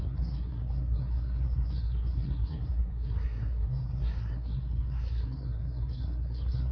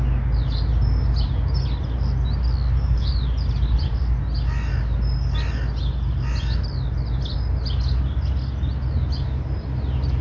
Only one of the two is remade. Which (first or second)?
first